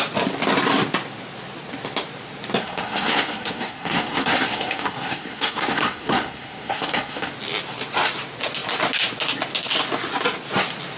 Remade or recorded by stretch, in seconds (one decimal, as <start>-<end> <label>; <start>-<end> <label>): 0.0-2.6 recorded; 2.6-7.3 remade; 7.3-11.0 recorded